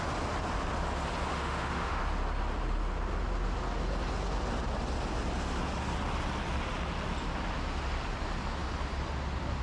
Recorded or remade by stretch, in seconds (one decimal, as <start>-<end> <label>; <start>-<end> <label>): 0.0-1.3 recorded; 1.3-2.0 remade; 2.0-9.6 recorded